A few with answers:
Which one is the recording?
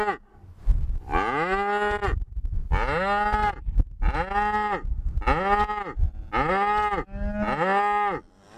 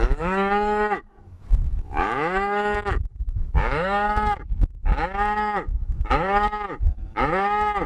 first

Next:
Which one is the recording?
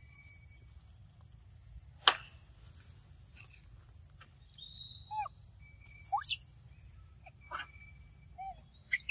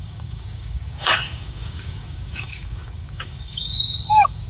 first